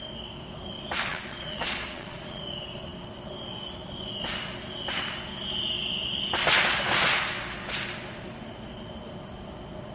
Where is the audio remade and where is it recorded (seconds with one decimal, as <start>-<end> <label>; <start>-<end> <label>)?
0.0-1.1 recorded; 1.1-2.4 remade; 2.4-9.9 recorded